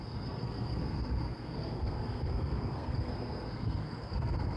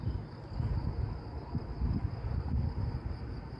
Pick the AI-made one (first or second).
first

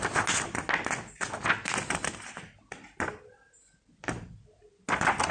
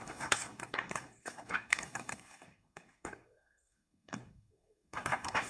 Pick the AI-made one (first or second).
second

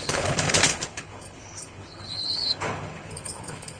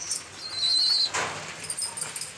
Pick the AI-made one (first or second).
first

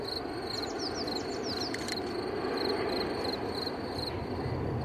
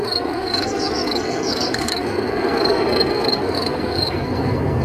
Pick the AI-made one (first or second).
second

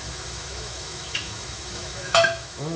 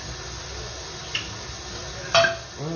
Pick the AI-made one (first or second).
first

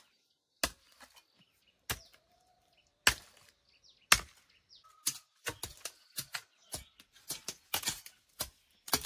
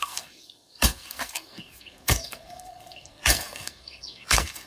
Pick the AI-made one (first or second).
second